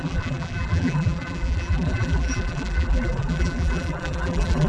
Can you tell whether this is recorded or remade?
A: remade